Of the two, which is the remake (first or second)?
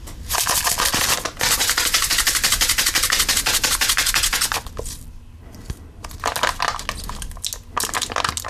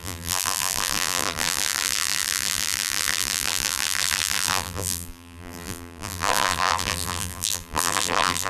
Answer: second